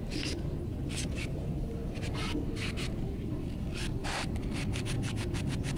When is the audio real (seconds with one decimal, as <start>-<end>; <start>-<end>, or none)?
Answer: 0.0-5.8